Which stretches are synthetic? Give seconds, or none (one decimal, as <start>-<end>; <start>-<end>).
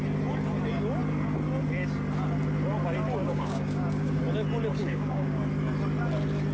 3.2-4.2; 4.8-5.4